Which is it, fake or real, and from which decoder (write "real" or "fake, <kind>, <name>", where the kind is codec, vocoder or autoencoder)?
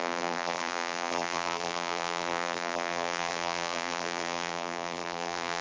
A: fake, vocoder, BigVGAN v2